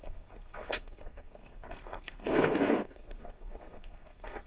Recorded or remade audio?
remade